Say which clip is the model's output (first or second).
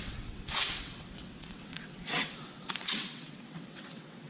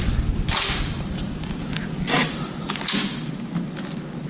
first